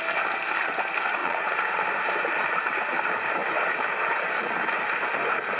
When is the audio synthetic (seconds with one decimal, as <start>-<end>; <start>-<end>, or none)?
1.2-1.8